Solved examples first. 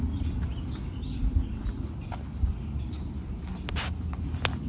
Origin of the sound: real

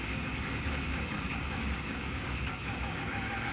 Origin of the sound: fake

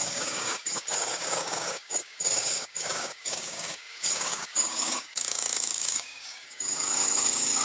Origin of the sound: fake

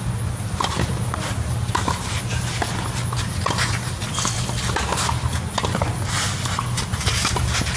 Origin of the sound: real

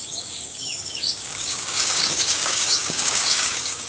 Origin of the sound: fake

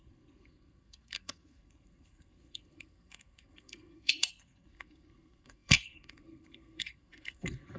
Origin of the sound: fake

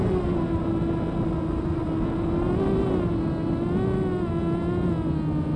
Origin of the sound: real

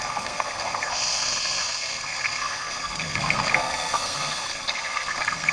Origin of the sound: fake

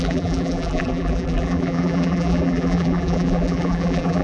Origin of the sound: fake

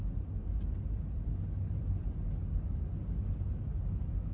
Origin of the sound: real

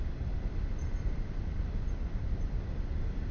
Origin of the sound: real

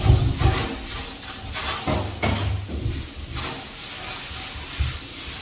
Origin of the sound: real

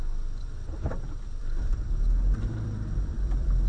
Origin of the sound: fake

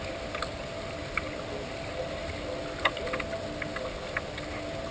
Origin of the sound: real